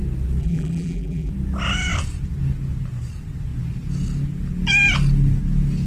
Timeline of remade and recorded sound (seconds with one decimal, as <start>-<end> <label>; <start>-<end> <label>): 0.0-0.4 recorded; 0.4-1.3 remade; 1.3-5.9 recorded

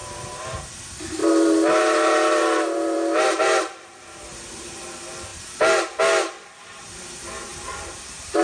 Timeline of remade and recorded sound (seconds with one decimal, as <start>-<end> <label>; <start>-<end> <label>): 0.0-0.7 remade; 0.7-1.2 recorded; 1.2-4.8 remade; 4.8-7.5 recorded; 7.5-8.4 remade

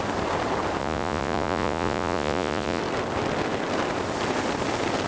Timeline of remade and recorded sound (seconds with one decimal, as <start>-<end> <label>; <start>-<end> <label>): 0.0-0.8 recorded; 0.8-2.8 remade; 2.8-5.1 recorded

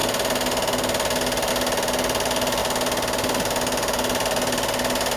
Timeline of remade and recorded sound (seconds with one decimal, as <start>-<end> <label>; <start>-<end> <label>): 0.0-5.2 recorded

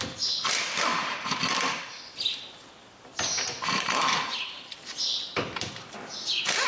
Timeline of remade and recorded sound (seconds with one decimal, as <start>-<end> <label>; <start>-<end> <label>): 0.0-0.9 recorded; 0.9-1.4 remade; 1.4-6.7 recorded

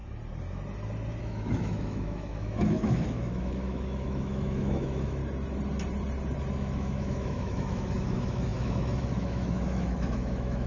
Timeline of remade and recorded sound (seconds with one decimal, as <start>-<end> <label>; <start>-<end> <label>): 0.0-1.2 recorded; 1.2-5.2 remade; 5.2-6.5 recorded; 6.5-10.7 remade